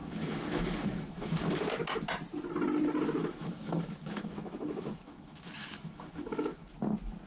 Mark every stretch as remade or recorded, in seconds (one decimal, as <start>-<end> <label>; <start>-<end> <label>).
0.0-1.7 remade; 1.7-3.2 recorded; 3.2-6.7 remade; 6.7-7.3 recorded